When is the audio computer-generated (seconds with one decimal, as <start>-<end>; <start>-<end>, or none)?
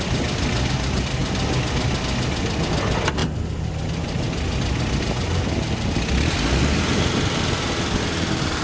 none